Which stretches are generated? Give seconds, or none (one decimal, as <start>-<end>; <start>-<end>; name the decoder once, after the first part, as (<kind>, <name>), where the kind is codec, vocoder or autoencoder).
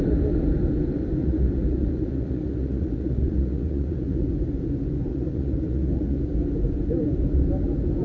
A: 1.2-4.3 (vocoder, Vocos); 5.1-6.2